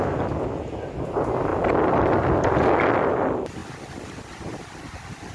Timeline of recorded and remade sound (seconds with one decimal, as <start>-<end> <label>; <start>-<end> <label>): 0.0-5.3 recorded